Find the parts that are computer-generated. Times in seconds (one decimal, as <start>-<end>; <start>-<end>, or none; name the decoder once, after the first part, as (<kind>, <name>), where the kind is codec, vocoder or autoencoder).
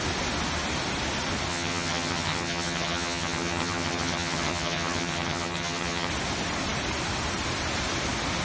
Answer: 1.5-6.1 (vocoder, HiFi-GAN)